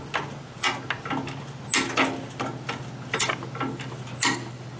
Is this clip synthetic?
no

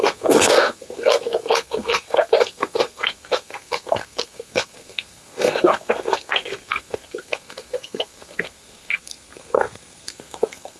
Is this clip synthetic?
yes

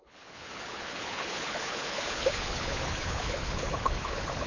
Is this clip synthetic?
yes